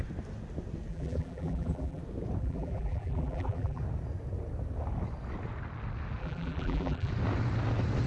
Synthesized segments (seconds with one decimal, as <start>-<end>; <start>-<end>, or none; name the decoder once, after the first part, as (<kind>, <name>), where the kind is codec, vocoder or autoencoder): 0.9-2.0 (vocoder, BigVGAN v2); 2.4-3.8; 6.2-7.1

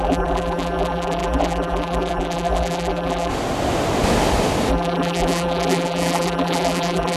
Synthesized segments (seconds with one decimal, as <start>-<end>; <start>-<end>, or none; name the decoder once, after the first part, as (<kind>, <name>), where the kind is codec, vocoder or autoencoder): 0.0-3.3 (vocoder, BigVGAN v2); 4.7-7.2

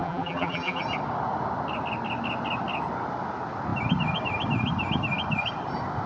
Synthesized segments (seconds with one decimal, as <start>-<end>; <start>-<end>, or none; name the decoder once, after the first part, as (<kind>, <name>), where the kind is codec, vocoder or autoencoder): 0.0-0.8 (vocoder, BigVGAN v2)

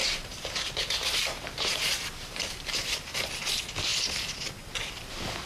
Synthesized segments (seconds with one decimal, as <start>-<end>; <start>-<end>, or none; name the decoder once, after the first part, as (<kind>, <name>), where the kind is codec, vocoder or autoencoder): 0.0-3.3 (vocoder, BigVGAN v2)

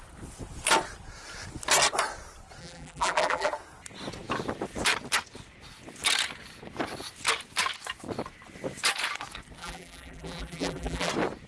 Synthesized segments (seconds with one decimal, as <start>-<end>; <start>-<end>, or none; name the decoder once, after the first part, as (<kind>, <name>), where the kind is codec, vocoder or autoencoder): 2.6-3.5 (vocoder, BigVGAN v2); 9.6-11.1

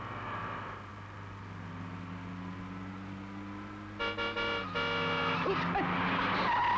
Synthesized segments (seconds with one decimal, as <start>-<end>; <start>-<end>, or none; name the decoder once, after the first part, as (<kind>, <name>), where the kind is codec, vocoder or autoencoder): none